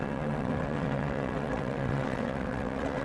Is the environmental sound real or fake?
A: fake